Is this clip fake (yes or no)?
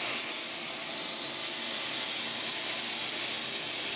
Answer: no